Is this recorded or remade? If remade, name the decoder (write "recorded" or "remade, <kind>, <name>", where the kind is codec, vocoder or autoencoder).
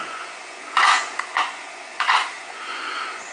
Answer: remade, vocoder, Vocos